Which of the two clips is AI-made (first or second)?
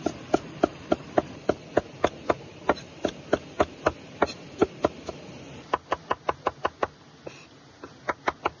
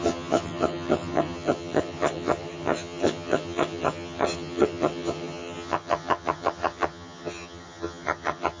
second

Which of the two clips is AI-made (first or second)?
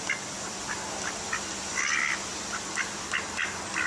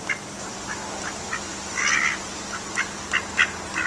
first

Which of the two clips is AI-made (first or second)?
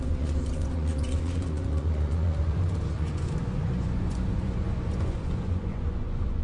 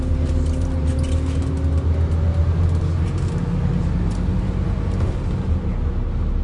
first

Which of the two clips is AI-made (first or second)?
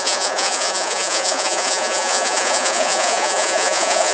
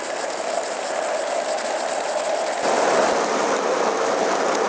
first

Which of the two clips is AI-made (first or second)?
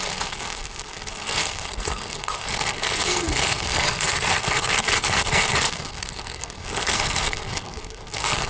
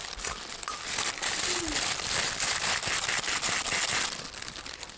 first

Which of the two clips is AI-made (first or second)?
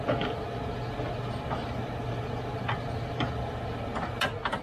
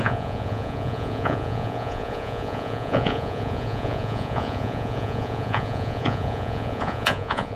second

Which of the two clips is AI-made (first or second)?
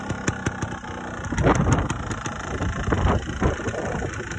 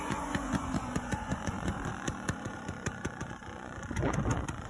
second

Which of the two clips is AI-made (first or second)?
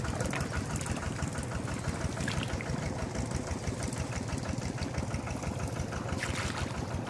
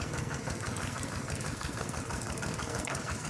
second